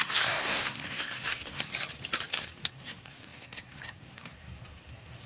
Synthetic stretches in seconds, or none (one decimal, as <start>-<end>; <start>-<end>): 0.0-1.7; 2.3-5.3